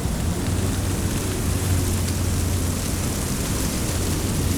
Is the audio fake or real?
real